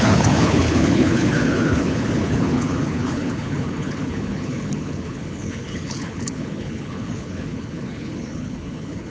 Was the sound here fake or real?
fake